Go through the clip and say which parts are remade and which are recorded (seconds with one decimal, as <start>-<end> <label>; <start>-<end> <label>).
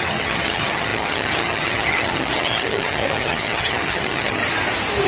0.0-4.4 remade; 4.4-5.1 recorded